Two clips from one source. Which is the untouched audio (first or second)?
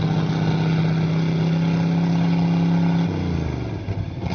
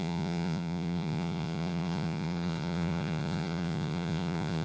first